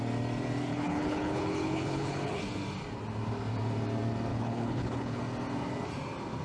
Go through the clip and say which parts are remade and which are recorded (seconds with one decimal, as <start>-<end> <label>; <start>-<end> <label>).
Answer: 0.0-0.7 recorded; 0.7-2.4 remade; 2.4-4.3 recorded; 4.3-5.2 remade; 5.2-6.4 recorded